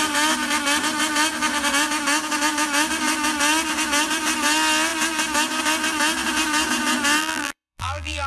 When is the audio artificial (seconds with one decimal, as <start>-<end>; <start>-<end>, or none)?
7.2-8.3